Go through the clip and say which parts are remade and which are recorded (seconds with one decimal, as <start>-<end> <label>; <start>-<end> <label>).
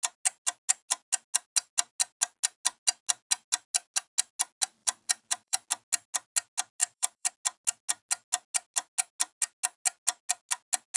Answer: 0.0-4.8 recorded; 4.8-5.7 remade; 5.7-6.8 recorded; 6.8-7.3 remade; 7.3-11.0 recorded